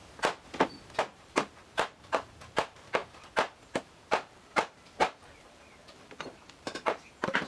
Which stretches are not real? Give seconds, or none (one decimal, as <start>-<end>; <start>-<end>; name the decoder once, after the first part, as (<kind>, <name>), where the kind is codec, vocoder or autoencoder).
1.0-3.0 (vocoder, BigVGAN v2); 4.1-7.5